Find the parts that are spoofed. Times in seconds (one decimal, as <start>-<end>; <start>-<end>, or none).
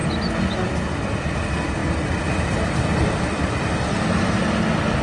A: 1.8-3.7